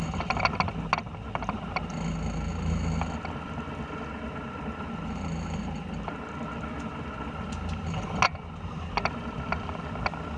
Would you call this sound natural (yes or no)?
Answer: yes